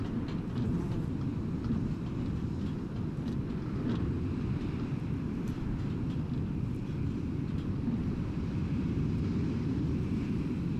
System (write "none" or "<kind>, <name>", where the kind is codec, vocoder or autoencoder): none